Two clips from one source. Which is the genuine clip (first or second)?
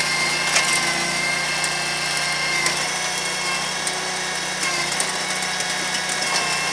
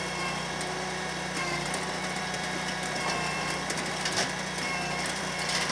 first